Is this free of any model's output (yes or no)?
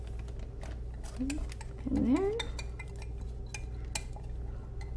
yes